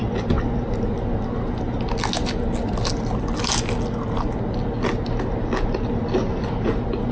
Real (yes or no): yes